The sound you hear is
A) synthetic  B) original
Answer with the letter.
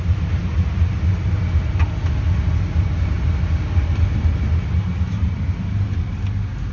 B